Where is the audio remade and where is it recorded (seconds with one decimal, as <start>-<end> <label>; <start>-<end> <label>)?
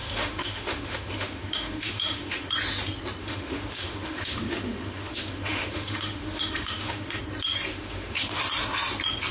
0.0-2.5 remade; 2.5-3.2 recorded; 3.2-7.2 remade; 7.2-7.7 recorded; 7.7-8.4 remade; 8.4-9.3 recorded